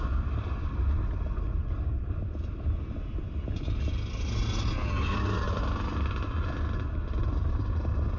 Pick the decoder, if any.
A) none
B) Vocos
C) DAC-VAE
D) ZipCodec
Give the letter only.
A